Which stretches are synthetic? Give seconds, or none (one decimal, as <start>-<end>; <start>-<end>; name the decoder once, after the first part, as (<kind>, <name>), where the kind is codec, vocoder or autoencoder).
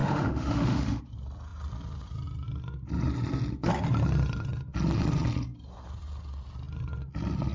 0.0-1.0 (autoencoder, DAC-VAE)